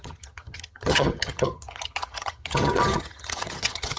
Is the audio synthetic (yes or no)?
yes